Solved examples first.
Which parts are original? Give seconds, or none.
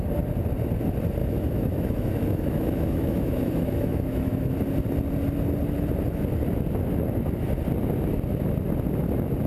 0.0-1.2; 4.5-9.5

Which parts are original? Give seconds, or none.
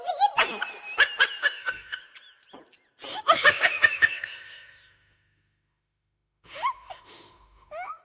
0.0-1.4; 2.0-3.1